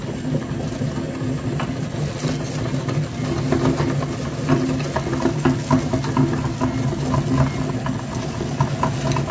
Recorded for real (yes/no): yes